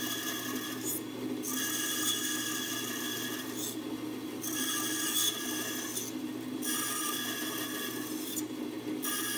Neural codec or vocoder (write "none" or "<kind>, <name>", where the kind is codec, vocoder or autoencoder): none